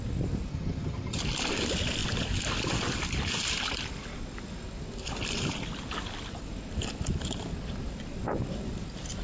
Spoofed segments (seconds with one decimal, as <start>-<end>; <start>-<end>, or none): 0.5-1.2